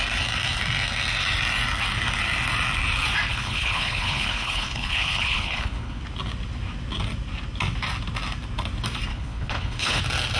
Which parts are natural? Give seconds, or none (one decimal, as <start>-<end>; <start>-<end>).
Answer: 0.0-3.3; 6.0-9.1; 10.0-10.4